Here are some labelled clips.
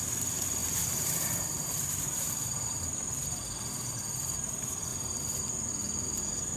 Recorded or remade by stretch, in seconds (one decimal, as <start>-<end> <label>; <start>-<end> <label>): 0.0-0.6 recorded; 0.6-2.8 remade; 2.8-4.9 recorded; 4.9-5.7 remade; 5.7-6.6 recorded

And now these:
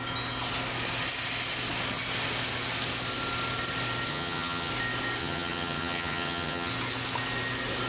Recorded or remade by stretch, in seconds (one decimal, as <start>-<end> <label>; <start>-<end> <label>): 0.0-4.1 recorded; 4.1-4.7 remade; 4.7-5.2 recorded; 5.2-6.7 remade; 6.7-7.9 recorded

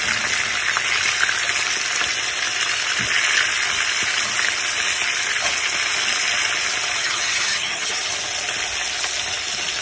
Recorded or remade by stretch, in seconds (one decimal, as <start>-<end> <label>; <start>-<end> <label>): 0.0-7.0 recorded; 7.0-8.1 remade; 8.1-9.8 recorded